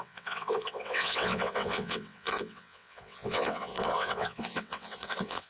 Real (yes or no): no